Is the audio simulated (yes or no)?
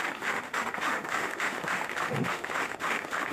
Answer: yes